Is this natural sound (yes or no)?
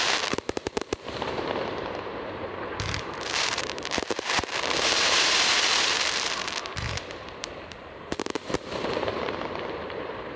no